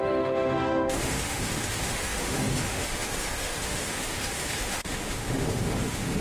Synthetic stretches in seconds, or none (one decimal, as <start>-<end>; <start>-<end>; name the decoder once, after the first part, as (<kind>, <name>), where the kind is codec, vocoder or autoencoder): 0.0-6.2 (autoencoder, DAC-VAE)